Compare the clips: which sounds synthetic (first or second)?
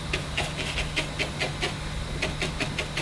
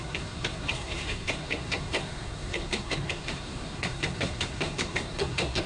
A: second